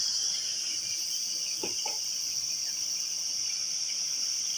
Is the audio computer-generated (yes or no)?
yes